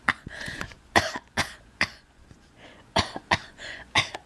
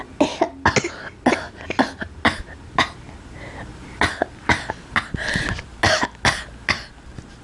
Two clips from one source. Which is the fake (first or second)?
first